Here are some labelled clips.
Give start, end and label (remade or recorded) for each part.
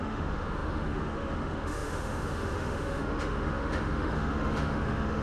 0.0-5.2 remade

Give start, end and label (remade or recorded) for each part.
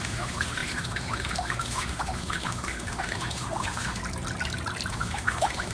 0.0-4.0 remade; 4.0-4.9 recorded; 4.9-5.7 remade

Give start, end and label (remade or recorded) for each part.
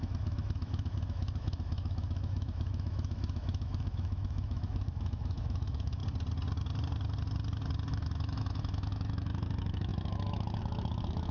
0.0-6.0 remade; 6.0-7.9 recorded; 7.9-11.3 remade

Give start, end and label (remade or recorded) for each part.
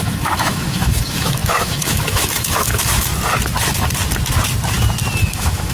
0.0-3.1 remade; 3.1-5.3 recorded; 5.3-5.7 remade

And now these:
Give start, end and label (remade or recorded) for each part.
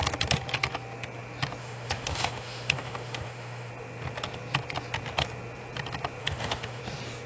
0.0-1.6 recorded; 1.6-3.7 remade; 3.7-6.2 recorded; 6.2-6.8 remade; 6.8-7.3 recorded